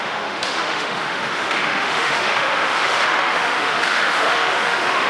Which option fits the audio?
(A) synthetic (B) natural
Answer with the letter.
A